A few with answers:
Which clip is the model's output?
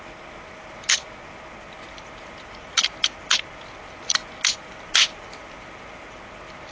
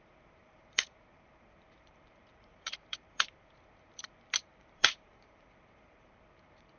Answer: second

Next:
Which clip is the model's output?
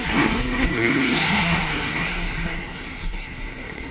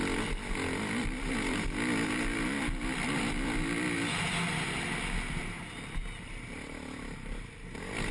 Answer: first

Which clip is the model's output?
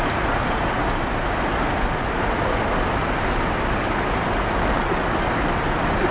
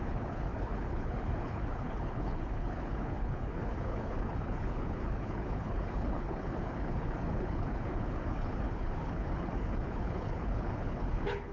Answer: second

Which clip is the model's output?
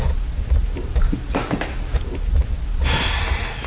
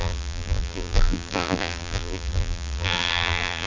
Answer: second